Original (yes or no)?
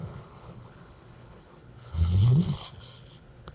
no